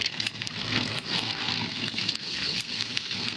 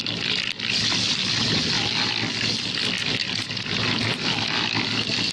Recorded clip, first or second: second